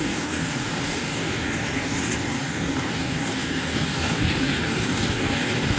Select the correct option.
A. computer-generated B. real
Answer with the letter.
A